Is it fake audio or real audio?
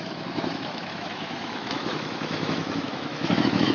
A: fake